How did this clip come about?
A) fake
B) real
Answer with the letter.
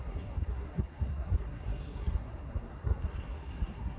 A